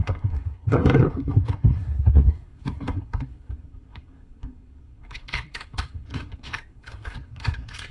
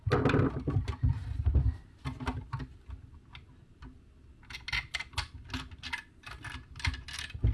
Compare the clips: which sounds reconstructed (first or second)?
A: first